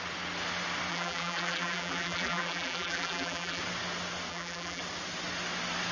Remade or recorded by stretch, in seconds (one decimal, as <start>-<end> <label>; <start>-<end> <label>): 0.0-0.9 recorded; 0.9-3.6 remade; 3.6-4.3 recorded; 4.3-4.8 remade; 4.8-5.9 recorded